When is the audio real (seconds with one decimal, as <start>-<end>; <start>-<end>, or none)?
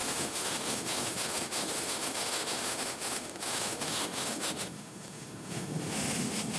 none